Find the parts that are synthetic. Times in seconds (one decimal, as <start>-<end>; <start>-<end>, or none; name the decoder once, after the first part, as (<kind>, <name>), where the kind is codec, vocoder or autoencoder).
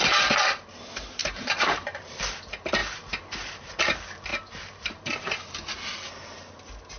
1.2-2.3 (vocoder, BigVGAN v2); 2.8-3.8; 4.3-5.2